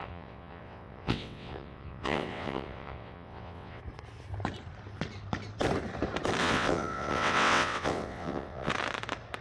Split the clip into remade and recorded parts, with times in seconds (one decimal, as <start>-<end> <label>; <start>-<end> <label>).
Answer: 0.0-3.8 remade; 3.8-6.4 recorded; 6.4-8.7 remade; 8.7-9.4 recorded